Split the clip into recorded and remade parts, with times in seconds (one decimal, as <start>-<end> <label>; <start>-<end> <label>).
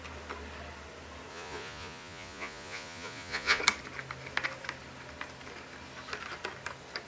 0.0-1.3 recorded; 1.3-3.6 remade; 3.6-7.1 recorded